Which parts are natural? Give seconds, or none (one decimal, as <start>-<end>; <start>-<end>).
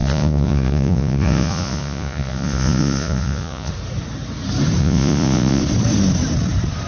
3.7-4.8; 5.6-6.9